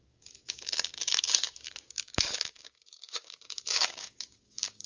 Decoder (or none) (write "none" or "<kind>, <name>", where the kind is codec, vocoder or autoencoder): codec, DAC